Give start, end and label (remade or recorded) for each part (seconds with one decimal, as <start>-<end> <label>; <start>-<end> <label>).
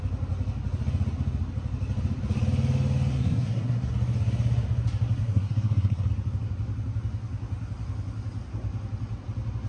0.0-3.1 recorded; 3.1-3.9 remade; 3.9-5.2 recorded; 5.2-6.1 remade; 6.1-9.7 recorded